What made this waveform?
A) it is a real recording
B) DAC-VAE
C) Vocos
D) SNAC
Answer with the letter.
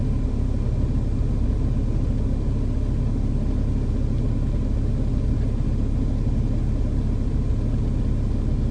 A